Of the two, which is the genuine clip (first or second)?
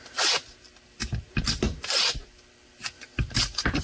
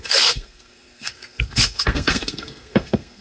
first